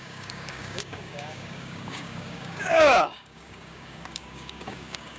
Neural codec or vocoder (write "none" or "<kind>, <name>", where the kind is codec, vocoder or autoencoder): codec, DAC